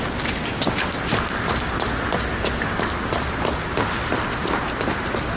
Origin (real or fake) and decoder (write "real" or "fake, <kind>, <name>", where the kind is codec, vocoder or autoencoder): real